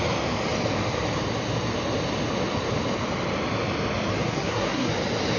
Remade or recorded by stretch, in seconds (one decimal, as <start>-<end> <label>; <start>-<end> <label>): 0.0-4.2 recorded; 4.2-4.9 remade; 4.9-5.4 recorded